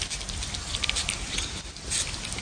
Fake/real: real